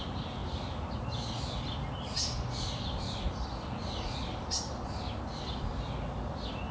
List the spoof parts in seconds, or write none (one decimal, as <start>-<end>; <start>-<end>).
none